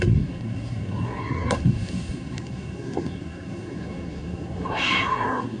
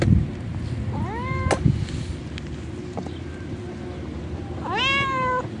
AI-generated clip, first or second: first